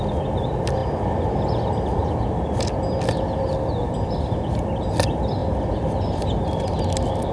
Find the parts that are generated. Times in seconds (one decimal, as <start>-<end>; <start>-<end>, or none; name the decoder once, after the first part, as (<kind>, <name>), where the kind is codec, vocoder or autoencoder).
none